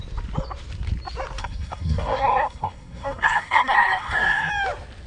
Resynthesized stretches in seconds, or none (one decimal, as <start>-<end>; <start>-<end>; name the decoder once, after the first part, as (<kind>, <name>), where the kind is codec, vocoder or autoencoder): 1.4-4.5 (codec, SNAC)